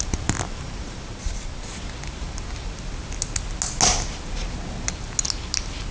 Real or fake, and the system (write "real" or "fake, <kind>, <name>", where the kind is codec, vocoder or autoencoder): real